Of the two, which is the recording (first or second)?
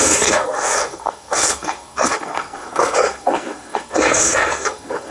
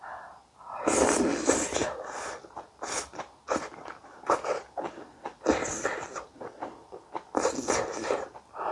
second